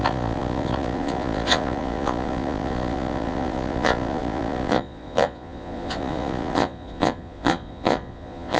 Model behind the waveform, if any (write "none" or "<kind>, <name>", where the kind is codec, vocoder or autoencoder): vocoder, Vocos